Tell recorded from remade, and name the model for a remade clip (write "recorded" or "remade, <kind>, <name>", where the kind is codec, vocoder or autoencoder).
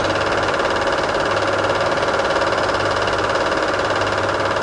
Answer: recorded